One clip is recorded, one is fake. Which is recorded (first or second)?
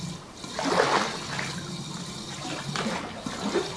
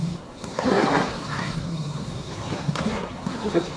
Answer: first